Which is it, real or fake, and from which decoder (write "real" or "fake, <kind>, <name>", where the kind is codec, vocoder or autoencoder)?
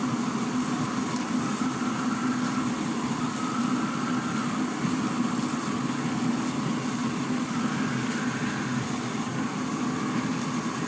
real